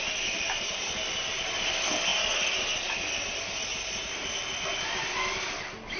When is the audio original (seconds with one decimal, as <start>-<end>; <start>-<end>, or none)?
0.0-6.0